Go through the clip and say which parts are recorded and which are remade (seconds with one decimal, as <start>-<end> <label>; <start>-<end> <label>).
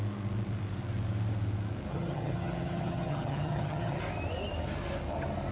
0.0-1.9 recorded; 1.9-4.0 remade; 4.0-5.5 recorded